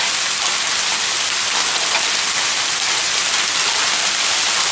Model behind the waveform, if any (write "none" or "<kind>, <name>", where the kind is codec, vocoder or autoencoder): none